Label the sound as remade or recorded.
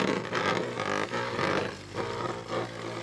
recorded